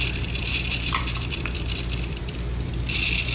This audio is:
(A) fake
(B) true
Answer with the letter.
A